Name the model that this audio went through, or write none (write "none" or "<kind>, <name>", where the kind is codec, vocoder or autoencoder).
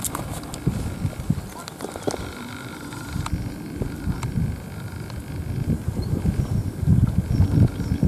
none